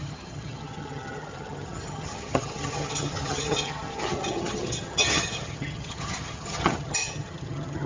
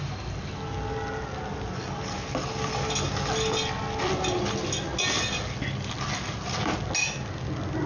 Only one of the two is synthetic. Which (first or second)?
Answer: first